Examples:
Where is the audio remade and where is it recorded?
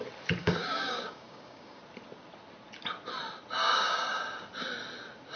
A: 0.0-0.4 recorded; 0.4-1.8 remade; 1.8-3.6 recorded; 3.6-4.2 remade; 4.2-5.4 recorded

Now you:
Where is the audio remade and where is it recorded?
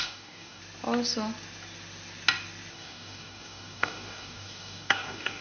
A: 0.0-0.6 remade; 0.6-2.7 recorded; 2.7-5.4 remade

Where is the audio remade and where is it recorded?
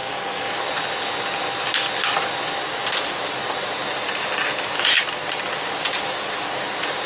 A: 0.0-0.5 remade; 0.5-7.1 recorded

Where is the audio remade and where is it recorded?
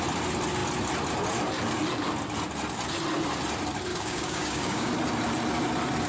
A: 0.0-3.9 recorded; 3.9-4.9 remade; 4.9-6.1 recorded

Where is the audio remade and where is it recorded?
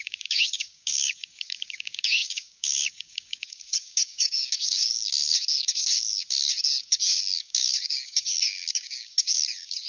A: 0.0-9.9 remade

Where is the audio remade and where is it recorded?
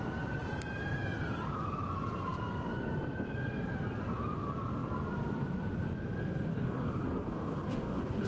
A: 0.0-6.5 recorded; 6.5-8.3 remade